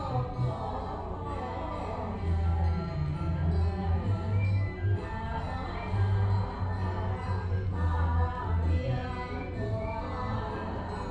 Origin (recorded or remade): recorded